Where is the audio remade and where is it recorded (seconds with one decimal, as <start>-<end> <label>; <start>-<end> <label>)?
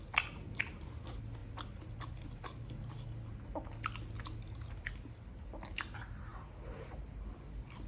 0.0-7.9 recorded